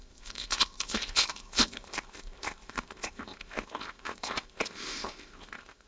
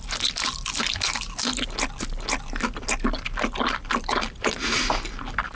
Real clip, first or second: second